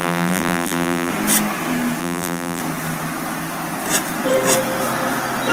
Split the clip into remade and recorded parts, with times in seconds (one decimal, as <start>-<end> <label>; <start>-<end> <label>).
0.0-1.1 remade; 1.1-2.0 recorded; 2.0-2.6 remade; 2.6-5.5 recorded

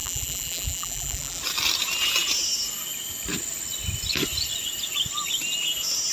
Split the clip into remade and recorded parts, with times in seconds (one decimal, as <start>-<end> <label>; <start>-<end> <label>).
0.0-1.4 remade; 1.4-6.1 recorded

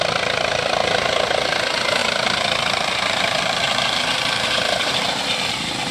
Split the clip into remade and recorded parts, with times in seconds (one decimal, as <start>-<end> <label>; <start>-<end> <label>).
0.0-0.8 recorded; 0.8-1.4 remade; 1.4-2.0 recorded; 2.0-5.5 remade; 5.5-5.9 recorded

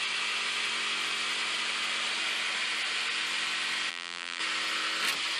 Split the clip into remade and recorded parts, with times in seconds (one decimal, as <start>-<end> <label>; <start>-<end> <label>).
0.0-3.9 recorded; 3.9-4.4 remade; 4.4-5.4 recorded

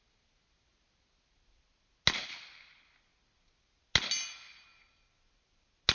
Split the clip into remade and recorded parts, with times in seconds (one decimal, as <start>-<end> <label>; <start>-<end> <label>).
0.0-5.9 recorded

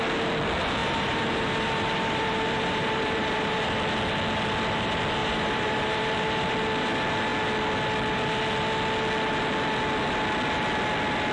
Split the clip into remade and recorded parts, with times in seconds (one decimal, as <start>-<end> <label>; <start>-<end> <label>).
0.0-0.8 recorded; 0.8-3.6 remade; 3.6-5.2 recorded; 5.2-6.5 remade; 6.5-11.3 recorded

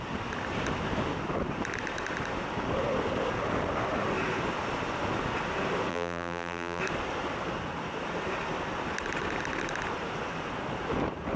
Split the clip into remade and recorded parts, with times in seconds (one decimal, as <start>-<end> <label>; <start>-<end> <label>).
0.0-5.9 recorded; 5.9-6.8 remade; 6.8-11.4 recorded

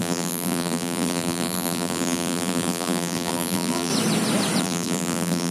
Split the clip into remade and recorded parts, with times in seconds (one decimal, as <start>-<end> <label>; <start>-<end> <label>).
0.0-3.9 remade; 3.9-4.6 recorded; 4.6-5.5 remade